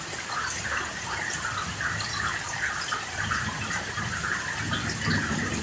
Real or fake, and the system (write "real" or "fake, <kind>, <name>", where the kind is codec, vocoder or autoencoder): real